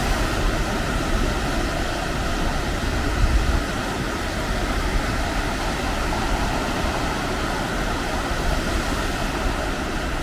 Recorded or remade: recorded